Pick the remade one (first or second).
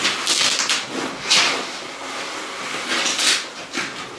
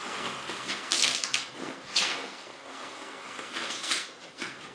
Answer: second